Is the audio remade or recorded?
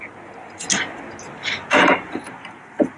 recorded